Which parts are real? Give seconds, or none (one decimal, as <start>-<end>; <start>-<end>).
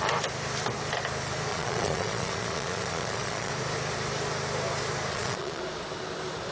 0.0-1.5; 3.5-5.1; 5.6-6.5